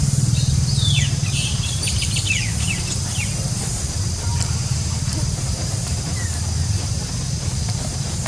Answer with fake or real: fake